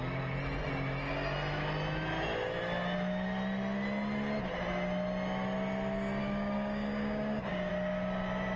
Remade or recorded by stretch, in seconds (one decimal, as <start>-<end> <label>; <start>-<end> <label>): 0.0-6.2 recorded; 6.2-7.7 remade; 7.7-8.6 recorded